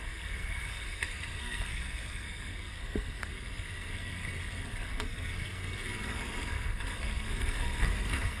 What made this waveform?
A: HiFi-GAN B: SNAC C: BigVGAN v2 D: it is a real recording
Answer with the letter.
B